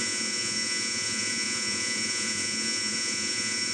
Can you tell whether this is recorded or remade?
remade